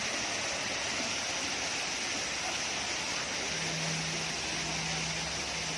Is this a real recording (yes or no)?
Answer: yes